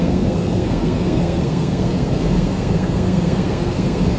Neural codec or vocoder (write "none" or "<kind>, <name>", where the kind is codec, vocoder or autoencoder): codec, SNAC